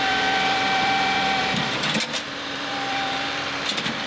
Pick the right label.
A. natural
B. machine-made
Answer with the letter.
B